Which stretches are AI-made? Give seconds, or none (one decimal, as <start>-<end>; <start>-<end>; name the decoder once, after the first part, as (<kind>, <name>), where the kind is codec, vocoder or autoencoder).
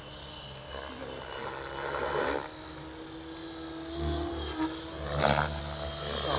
none